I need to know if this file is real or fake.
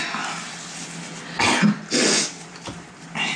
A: real